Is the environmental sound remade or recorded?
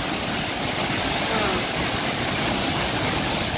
recorded